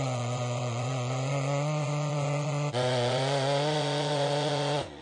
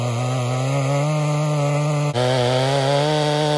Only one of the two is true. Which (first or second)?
second